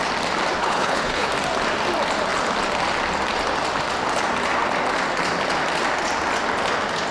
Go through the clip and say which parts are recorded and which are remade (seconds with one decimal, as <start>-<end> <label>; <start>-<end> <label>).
0.0-0.6 recorded; 0.6-1.3 remade; 1.3-7.1 recorded